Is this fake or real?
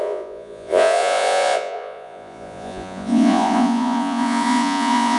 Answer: fake